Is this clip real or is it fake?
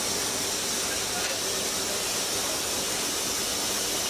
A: real